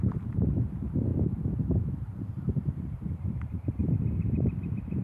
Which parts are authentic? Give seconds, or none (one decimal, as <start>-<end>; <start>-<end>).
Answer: 3.8-5.0